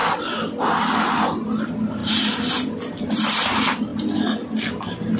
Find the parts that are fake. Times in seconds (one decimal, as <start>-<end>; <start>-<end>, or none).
none